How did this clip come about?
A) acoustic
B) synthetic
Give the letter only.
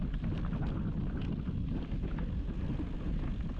A